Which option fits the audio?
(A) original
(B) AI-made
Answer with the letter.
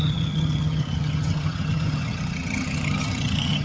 B